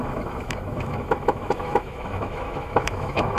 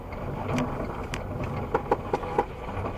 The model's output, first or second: first